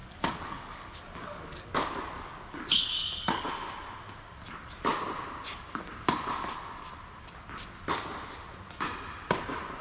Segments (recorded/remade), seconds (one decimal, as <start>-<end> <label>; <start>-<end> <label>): 0.0-3.5 remade; 3.5-9.8 recorded